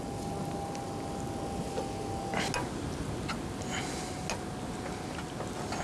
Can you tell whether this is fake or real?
real